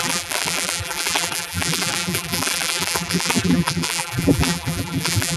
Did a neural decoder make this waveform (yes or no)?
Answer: yes